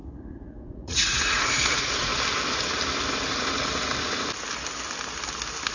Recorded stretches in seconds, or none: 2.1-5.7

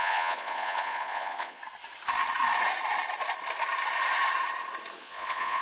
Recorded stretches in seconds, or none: 1.6-5.0

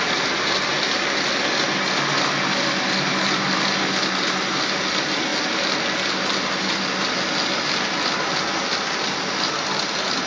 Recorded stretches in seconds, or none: 0.0-10.3